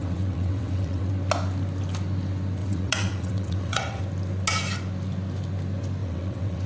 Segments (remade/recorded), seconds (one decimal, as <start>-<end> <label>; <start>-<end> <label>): 0.0-1.1 remade; 1.1-2.6 recorded; 2.6-4.0 remade; 4.0-6.0 recorded; 6.0-6.7 remade